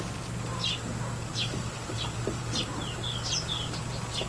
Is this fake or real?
real